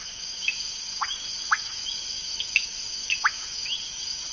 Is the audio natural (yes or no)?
no